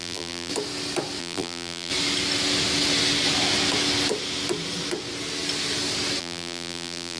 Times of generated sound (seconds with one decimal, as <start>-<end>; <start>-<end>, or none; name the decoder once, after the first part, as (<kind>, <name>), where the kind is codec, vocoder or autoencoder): 0.0-0.5 (vocoder, BigVGAN v2); 1.2-1.9; 6.2-7.2